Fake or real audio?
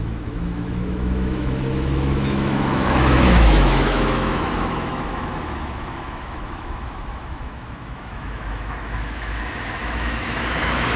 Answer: fake